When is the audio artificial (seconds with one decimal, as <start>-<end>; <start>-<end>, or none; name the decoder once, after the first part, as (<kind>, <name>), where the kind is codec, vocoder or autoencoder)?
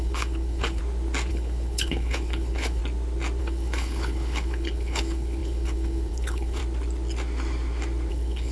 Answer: 0.0-0.8 (codec, HILCodec); 1.3-2.8; 3.4-6.6; 8.1-8.5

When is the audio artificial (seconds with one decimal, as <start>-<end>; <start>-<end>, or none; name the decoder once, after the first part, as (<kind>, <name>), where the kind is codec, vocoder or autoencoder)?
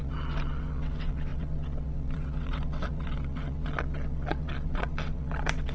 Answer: 0.0-5.7 (vocoder, WaveNeXt)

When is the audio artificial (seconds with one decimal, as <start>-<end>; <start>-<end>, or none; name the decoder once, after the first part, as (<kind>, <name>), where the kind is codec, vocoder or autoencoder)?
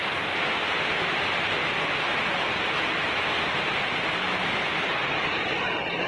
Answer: 3.7-6.1 (vocoder, BigVGAN v2)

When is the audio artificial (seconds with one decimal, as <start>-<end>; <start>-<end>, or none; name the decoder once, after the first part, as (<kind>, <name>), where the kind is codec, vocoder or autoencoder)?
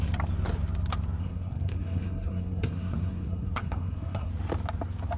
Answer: 1.2-4.3 (codec, SNAC)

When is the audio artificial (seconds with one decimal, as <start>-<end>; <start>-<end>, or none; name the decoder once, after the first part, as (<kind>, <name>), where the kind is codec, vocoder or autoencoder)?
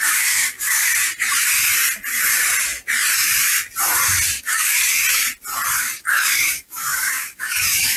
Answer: 0.0-0.9 (codec, DAC); 4.4-5.0; 5.8-8.0